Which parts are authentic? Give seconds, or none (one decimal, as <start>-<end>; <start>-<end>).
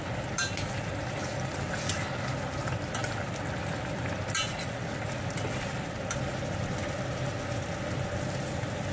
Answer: 0.0-8.9